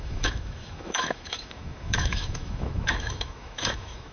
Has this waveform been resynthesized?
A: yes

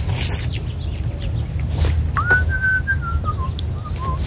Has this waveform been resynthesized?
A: no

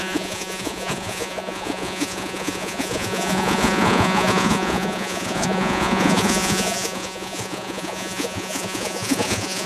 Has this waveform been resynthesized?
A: yes